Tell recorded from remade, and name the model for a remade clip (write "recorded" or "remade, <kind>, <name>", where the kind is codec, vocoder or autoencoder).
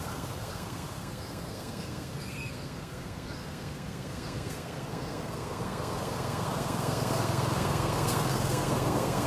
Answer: remade, codec, SNAC